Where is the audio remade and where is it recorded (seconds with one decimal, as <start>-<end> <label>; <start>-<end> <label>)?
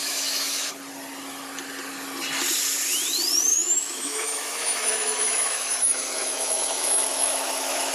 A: 0.0-0.7 remade; 0.7-3.5 recorded; 3.5-7.9 remade